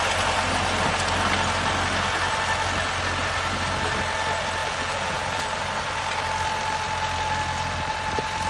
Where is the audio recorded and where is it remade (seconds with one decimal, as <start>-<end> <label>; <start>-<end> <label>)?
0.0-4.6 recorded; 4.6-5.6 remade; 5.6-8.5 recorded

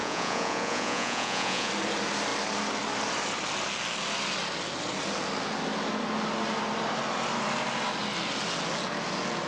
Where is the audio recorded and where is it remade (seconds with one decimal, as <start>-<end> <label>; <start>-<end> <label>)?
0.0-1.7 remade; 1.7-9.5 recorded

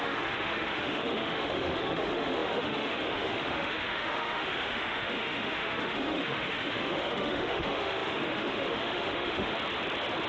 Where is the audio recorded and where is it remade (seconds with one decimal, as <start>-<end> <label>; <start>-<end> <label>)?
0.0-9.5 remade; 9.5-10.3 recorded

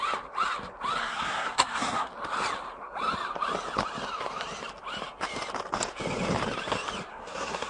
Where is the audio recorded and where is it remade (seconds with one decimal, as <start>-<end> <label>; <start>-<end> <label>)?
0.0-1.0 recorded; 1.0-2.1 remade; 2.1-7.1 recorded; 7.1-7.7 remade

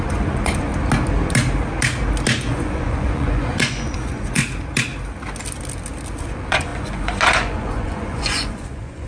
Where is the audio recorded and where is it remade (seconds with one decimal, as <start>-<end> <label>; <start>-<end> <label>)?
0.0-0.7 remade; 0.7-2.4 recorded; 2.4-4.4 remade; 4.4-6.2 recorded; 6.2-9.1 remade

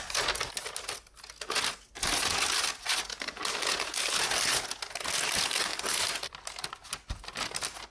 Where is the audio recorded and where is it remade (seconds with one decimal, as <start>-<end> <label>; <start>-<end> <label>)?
0.0-7.9 recorded

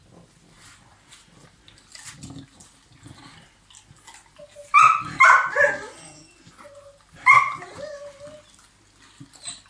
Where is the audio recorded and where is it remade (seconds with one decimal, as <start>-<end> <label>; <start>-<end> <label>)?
0.0-9.7 recorded